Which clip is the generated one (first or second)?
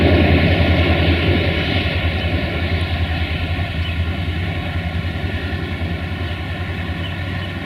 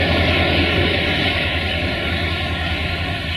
second